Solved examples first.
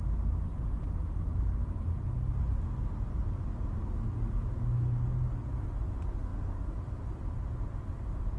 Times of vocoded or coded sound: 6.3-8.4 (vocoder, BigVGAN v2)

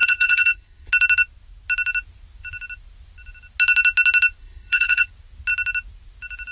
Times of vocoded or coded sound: 0.0-0.9 (codec, HILCodec); 4.4-5.1

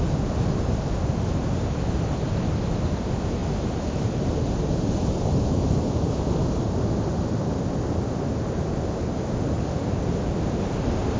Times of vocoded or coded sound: 3.4-6.2 (vocoder, BigVGAN v2)

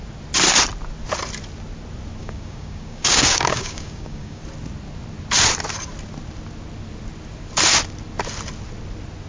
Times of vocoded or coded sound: 2.2-4.4 (codec, DAC)

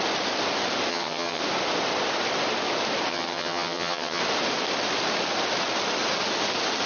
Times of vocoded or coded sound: 0.9-1.4 (vocoder, HiFi-GAN); 3.1-4.2

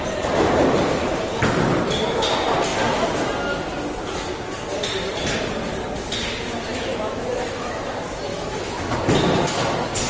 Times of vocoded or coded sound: 6.7-7.8 (autoencoder, DAC-VAE); 8.3-8.8

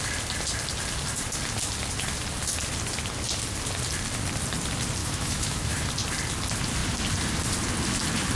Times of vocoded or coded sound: 5.0-5.9 (autoencoder, DAC-VAE)